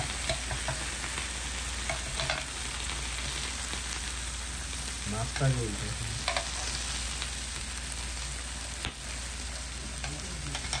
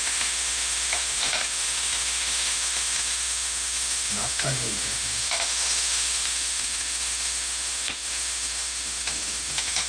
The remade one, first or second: second